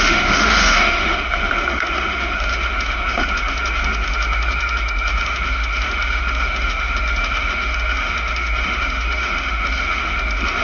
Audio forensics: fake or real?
fake